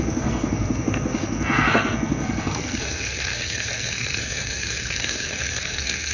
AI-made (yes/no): yes